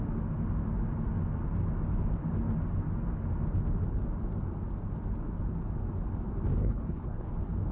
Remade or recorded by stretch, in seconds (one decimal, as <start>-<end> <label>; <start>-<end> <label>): 0.0-6.6 recorded; 6.6-7.3 remade; 7.3-7.7 recorded